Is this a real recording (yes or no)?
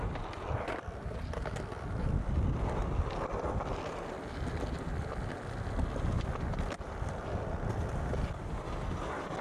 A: yes